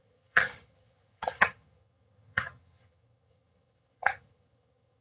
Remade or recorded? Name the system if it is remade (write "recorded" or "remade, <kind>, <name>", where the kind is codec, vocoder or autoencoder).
remade, vocoder, HiFi-GAN